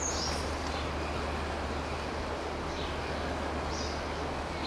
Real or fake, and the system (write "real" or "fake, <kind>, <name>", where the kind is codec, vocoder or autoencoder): real